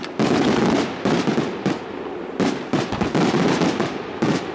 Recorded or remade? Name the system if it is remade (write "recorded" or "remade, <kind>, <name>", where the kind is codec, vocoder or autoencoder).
recorded